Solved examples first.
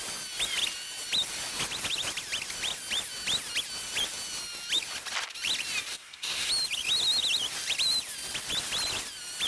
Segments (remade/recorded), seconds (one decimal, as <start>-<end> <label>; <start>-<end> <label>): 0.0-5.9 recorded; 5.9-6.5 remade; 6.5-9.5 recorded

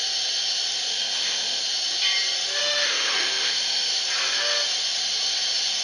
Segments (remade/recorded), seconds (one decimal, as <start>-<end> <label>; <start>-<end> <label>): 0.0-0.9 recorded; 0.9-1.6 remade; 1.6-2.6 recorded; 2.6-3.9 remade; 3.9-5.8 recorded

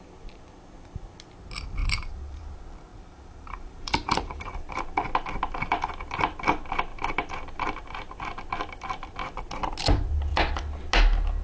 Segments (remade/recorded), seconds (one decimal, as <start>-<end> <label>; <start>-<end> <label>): 0.0-1.8 recorded; 1.8-2.4 remade; 2.4-2.9 recorded; 2.9-4.7 remade; 4.7-11.4 recorded